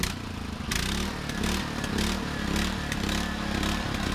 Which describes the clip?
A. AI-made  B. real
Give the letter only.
B